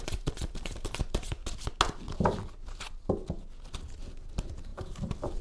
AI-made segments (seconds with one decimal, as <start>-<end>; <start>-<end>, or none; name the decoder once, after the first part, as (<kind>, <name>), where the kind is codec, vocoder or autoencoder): 0.0-1.4 (vocoder, BigVGAN v2); 4.3-5.4